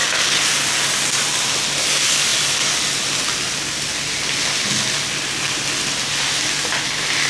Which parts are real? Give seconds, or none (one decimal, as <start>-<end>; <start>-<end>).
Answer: 0.0-7.3